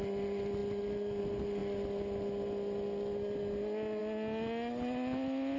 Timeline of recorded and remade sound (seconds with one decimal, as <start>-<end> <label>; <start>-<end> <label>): 0.0-5.6 recorded